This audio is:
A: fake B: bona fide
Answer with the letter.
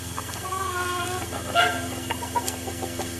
A